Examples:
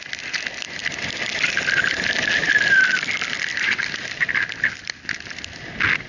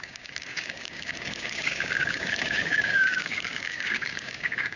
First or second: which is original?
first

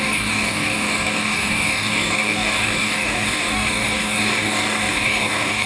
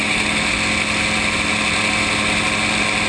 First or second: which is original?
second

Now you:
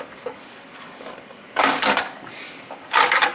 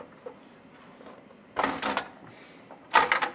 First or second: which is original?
second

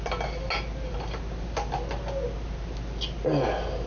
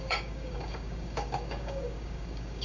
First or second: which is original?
first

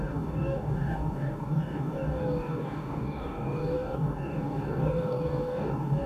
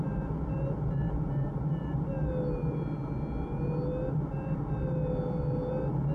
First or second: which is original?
second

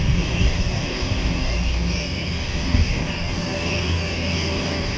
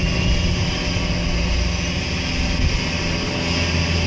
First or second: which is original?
second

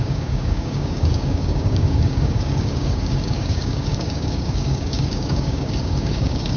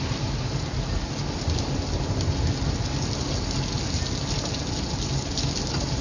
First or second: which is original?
second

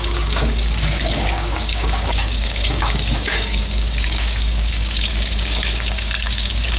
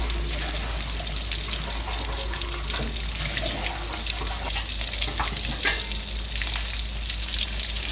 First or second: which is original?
second